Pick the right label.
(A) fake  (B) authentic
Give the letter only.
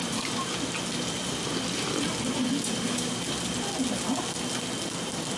B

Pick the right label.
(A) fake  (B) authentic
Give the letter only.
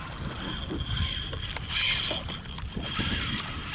B